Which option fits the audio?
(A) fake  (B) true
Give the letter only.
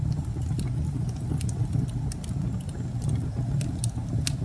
B